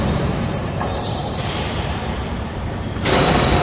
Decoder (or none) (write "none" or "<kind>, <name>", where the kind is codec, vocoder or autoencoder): vocoder, BigVGAN v2